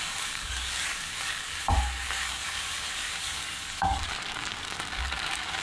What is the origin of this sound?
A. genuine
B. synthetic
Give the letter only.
B